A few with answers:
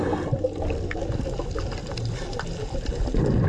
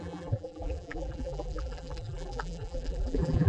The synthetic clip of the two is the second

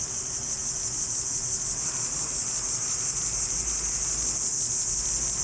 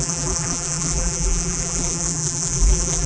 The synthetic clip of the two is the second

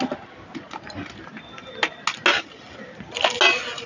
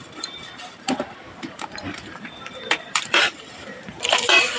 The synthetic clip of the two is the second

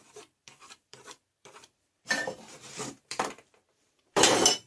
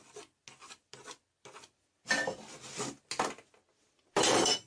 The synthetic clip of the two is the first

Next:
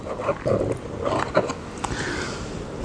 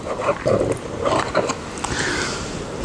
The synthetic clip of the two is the second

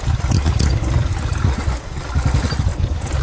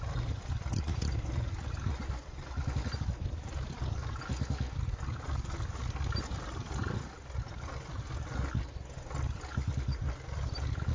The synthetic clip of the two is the first